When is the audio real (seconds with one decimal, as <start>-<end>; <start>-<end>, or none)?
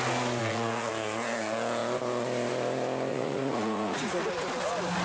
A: 0.0-0.4; 0.9-3.1; 4.2-5.0